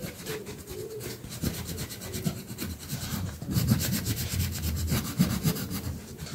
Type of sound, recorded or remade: remade